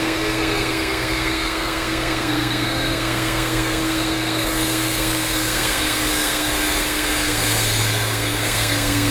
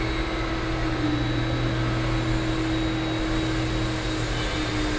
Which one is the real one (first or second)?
second